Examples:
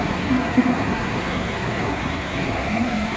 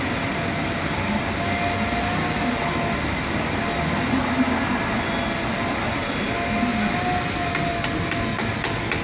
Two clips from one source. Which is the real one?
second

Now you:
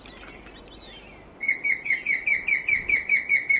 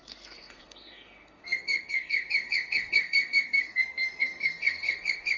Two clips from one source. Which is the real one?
first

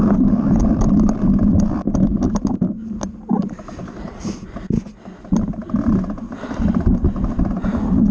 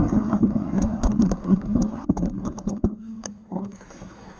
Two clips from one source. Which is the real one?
first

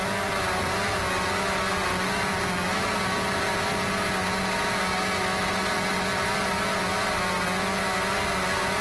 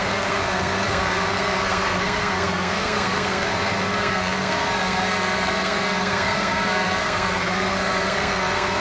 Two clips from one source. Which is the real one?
first